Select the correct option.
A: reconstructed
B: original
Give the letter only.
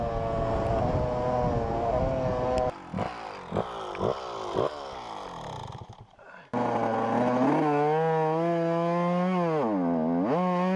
B